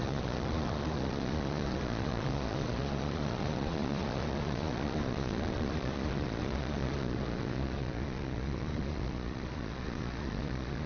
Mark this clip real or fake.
fake